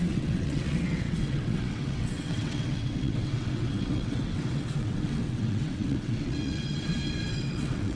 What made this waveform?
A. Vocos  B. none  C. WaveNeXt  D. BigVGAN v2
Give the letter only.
C